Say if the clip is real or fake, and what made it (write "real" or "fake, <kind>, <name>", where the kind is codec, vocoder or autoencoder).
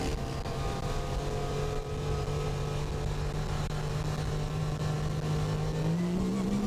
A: real